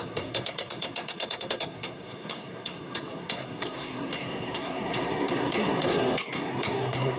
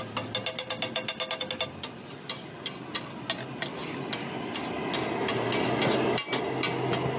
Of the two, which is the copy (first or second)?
first